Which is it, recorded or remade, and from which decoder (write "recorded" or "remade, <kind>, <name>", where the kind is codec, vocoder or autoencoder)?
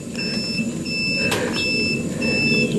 recorded